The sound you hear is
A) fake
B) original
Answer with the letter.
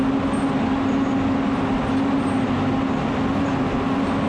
B